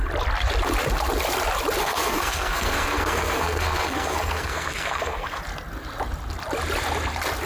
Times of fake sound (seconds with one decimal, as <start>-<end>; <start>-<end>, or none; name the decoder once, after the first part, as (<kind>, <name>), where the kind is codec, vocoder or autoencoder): 1.8-5.4 (codec, SNAC)

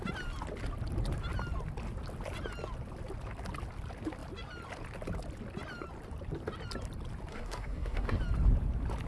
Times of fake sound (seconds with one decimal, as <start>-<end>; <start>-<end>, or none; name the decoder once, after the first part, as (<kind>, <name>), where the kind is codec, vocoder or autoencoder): 7.3-8.2 (codec, SNAC)

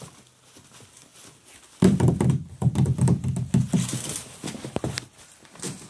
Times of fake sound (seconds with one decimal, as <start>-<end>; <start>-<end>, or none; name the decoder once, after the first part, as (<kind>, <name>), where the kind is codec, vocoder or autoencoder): none